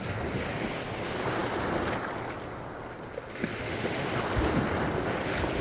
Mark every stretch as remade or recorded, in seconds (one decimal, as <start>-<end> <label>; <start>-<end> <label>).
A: 0.0-3.6 recorded; 3.6-4.1 remade; 4.1-5.6 recorded